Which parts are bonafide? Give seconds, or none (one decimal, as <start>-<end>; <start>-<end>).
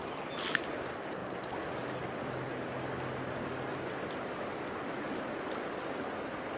0.0-6.6